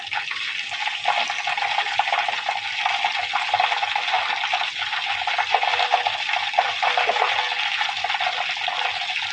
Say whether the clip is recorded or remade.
recorded